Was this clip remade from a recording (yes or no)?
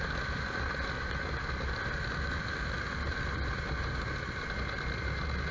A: no